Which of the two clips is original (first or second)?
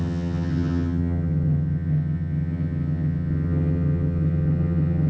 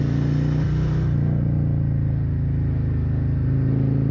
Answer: second